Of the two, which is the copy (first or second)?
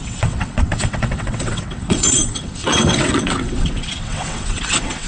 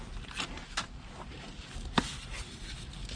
first